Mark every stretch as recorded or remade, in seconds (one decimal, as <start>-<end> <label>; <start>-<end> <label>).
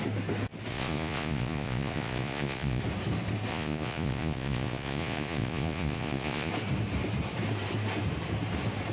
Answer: 0.0-0.7 recorded; 0.7-2.8 remade; 2.8-3.5 recorded; 3.5-6.5 remade; 6.5-8.9 recorded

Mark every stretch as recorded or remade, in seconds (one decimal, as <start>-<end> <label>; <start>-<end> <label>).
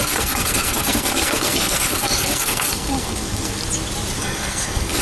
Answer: 0.0-3.6 remade; 3.6-4.2 recorded; 4.2-5.0 remade